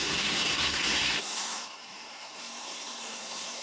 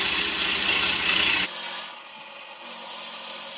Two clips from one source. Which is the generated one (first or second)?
first